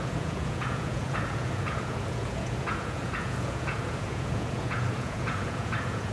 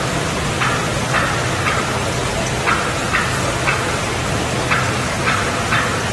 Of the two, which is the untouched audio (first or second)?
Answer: second